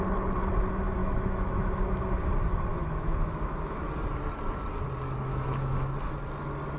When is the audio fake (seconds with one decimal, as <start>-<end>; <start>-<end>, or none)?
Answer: 1.0-2.3; 2.7-3.9; 5.3-5.9

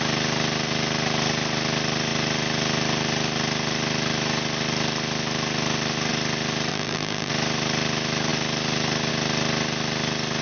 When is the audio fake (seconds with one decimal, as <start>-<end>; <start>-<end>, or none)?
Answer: 6.7-7.3

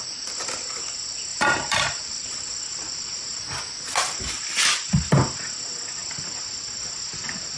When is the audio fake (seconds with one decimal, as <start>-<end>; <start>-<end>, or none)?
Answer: 1.3-3.7

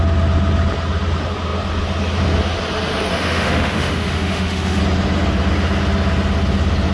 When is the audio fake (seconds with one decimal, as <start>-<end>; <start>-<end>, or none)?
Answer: 3.1-4.8